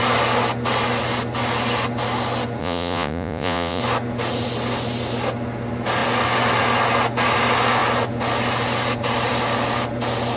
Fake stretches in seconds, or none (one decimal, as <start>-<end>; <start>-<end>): 2.6-3.8